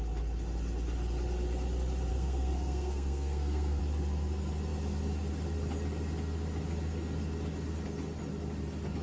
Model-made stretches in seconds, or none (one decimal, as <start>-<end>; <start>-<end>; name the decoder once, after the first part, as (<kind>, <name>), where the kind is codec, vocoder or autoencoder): 2.1-3.8 (codec, SNAC)